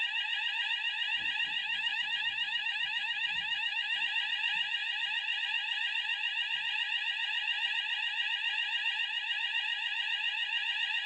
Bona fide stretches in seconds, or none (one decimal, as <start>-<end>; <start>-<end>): 0.0-1.6; 4.0-11.1